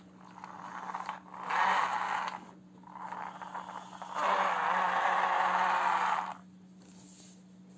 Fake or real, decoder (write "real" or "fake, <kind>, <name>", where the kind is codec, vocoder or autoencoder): real